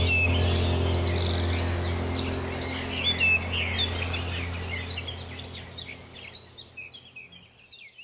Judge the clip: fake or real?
real